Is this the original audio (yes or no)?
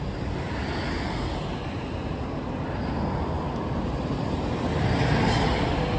yes